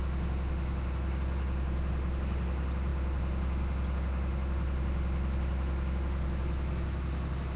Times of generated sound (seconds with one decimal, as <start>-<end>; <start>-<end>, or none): none